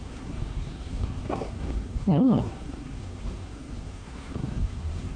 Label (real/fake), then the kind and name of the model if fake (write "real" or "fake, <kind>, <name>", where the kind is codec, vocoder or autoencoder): fake, codec, SNAC